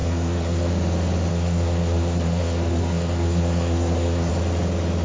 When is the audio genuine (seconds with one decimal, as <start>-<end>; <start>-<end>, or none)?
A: 0.7-1.3; 4.3-5.0